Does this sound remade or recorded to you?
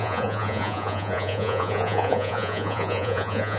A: remade